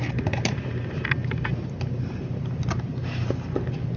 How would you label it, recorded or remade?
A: recorded